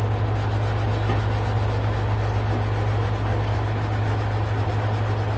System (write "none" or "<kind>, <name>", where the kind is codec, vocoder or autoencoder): none